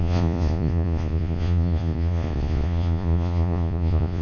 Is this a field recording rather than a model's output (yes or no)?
no